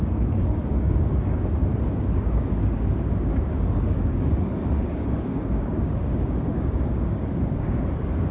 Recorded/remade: remade